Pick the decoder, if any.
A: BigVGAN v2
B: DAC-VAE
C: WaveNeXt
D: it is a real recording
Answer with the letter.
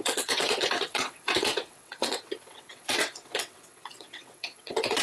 C